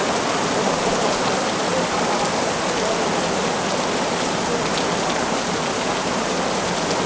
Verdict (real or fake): real